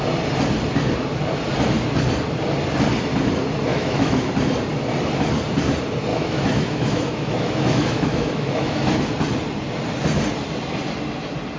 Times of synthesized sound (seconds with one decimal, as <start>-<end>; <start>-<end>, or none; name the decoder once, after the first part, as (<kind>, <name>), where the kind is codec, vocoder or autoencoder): 3.7-4.3 (autoencoder, DAC-VAE); 6.1-9.1